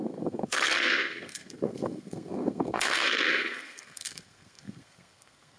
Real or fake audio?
fake